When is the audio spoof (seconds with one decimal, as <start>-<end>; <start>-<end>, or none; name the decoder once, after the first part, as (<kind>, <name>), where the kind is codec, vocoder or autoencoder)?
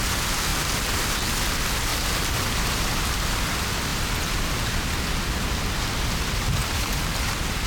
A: 0.5-1.1 (vocoder, BigVGAN v2); 3.9-4.6; 6.6-7.7